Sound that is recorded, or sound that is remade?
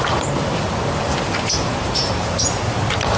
recorded